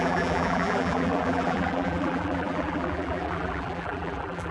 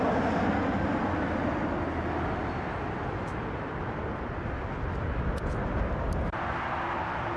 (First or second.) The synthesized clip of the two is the first